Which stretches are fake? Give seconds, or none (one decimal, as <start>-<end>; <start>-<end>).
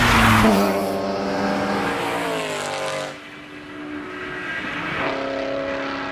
none